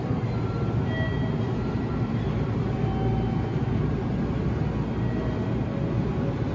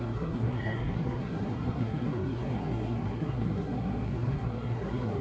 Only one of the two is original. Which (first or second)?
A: first